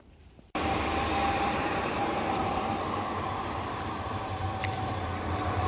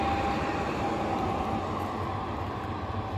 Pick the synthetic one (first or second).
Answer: first